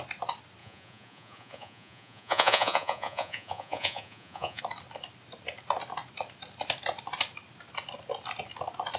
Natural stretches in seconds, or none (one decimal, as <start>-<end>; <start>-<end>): 0.0-0.6; 4.6-9.0